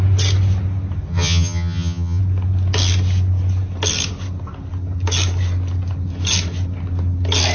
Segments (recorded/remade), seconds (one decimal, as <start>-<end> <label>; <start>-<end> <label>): 0.0-1.1 recorded; 1.1-2.2 remade; 2.2-7.5 recorded

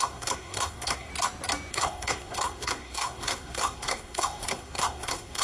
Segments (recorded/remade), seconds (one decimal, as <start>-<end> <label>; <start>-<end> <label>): 0.0-1.1 remade; 1.1-1.7 recorded; 1.7-5.4 remade

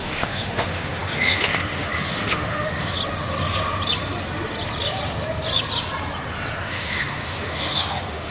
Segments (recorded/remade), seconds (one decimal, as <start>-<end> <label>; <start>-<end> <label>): 0.0-3.0 remade; 3.0-6.6 recorded; 6.6-8.3 remade

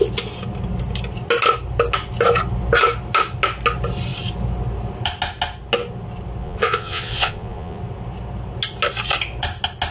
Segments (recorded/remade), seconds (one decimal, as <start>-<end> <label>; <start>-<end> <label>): 0.0-6.4 recorded; 6.4-7.8 remade; 7.8-9.9 recorded

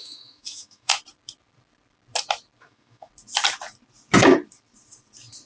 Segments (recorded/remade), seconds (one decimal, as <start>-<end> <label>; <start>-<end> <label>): 0.0-0.9 remade; 0.9-2.6 recorded; 2.6-3.1 remade; 3.1-5.5 recorded

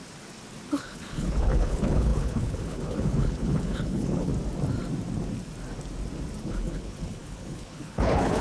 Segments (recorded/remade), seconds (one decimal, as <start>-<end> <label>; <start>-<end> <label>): 0.0-0.7 recorded; 0.7-4.3 remade; 4.3-6.4 recorded; 6.4-8.4 remade